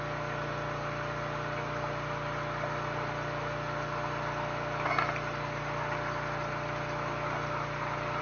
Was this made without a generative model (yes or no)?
yes